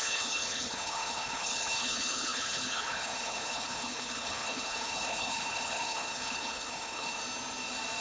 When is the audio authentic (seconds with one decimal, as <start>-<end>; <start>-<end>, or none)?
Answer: 7.2-8.0

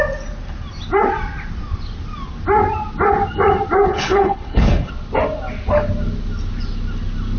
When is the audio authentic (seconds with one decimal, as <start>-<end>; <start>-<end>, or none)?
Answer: 0.0-3.9; 4.9-7.4